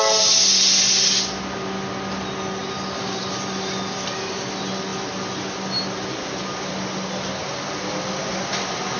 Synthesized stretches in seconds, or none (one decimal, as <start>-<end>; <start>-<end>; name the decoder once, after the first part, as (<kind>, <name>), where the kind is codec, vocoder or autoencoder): none